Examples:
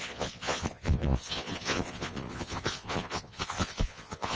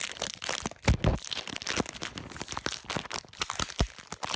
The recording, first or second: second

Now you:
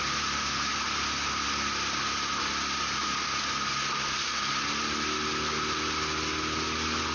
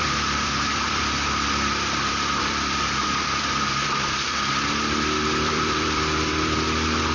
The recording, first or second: first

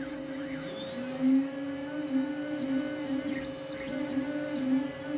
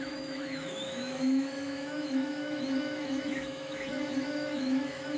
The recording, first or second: first